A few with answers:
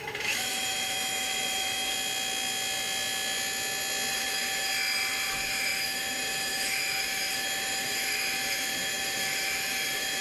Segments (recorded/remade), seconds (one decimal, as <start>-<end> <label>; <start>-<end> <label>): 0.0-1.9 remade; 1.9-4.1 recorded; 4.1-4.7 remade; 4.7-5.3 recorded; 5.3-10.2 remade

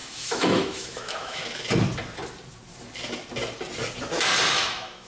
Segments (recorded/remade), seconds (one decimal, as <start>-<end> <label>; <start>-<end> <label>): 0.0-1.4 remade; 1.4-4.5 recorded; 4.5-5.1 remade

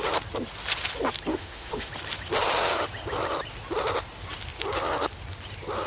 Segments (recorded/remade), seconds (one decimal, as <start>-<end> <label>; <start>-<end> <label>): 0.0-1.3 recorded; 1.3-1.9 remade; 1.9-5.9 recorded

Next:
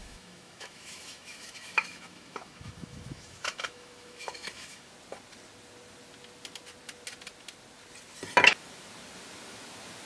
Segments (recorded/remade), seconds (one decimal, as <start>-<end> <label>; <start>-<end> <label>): 0.0-4.9 remade; 4.9-10.1 recorded

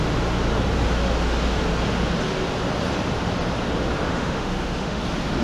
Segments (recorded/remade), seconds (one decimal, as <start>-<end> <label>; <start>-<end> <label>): 0.0-4.1 recorded; 4.1-5.0 remade; 5.0-5.4 recorded

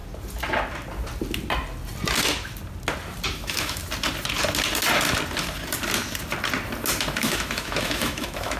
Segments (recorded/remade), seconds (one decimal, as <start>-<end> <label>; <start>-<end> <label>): 0.0-3.3 recorded; 3.3-3.8 remade; 3.8-7.2 recorded; 7.2-8.6 remade

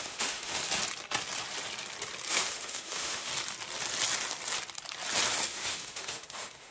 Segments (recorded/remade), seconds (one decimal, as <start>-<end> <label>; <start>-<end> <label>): 0.0-0.6 remade; 0.6-2.3 recorded; 2.3-3.3 remade; 3.3-5.5 recorded; 5.5-6.7 remade

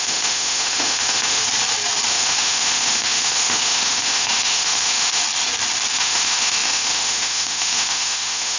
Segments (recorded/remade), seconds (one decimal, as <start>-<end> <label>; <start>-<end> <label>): 0.0-1.4 remade; 1.4-2.1 recorded; 2.1-5.2 remade; 5.2-5.9 recorded; 5.9-8.6 remade